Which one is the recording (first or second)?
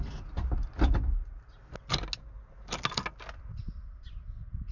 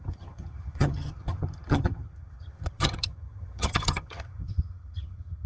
first